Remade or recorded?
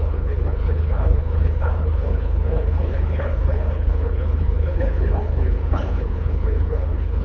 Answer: remade